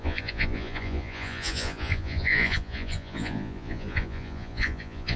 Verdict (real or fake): fake